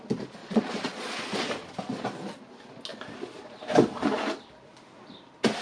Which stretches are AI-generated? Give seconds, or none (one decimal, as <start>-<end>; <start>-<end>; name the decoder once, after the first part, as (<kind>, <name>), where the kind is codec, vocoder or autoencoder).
0.4-1.5 (vocoder, Vocos)